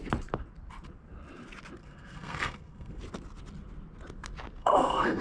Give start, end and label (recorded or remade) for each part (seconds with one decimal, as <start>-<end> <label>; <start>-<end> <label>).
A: 0.0-1.8 recorded; 1.8-3.0 remade; 3.0-4.6 recorded; 4.6-5.2 remade